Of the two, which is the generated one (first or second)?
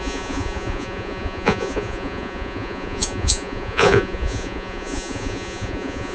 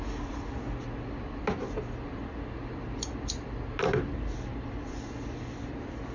first